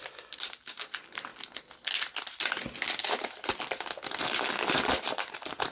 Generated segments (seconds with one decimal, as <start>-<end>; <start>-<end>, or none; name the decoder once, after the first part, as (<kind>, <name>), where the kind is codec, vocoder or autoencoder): none